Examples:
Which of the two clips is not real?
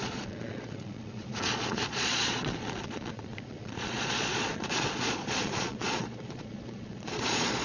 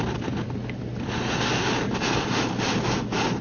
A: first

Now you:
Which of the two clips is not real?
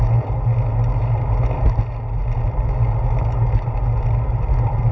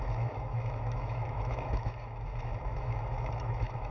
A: second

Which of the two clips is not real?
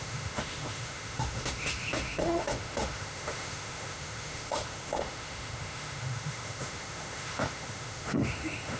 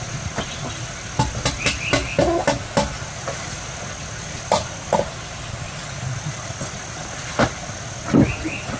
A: first